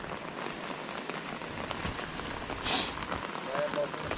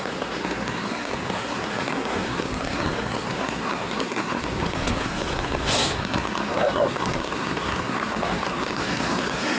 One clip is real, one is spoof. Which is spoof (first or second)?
second